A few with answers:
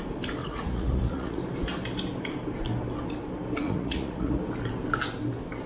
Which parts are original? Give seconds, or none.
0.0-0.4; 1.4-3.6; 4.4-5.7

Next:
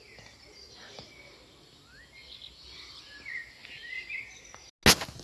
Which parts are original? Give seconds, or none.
0.0-5.2

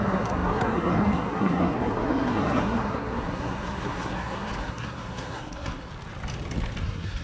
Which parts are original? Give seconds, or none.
5.9-6.8

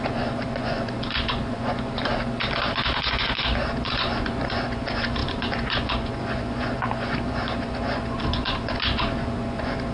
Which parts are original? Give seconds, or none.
2.1-2.7

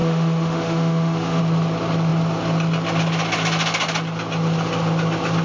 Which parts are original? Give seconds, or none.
1.4-5.4

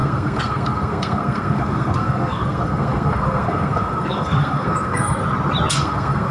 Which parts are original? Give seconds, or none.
5.2-5.7